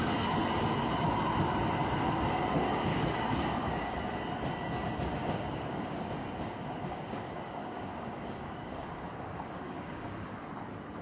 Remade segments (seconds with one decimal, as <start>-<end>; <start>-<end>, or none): 2.9-4.0; 5.2-10.3